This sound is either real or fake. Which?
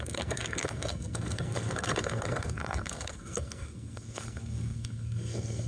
fake